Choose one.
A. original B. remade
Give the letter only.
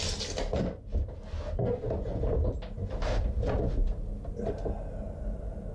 A